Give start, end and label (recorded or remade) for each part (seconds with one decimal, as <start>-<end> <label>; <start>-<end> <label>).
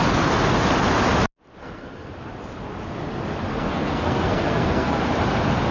0.0-1.6 recorded; 1.6-2.1 remade; 2.1-3.5 recorded; 3.5-5.0 remade; 5.0-5.7 recorded